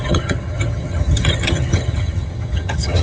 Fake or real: fake